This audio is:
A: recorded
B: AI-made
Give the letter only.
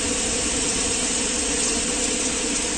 A